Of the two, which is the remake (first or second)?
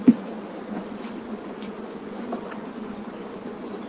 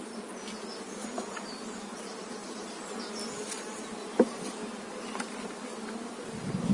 first